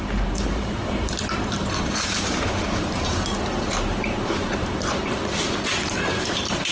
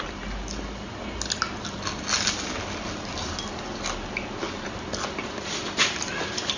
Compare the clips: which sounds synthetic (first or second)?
first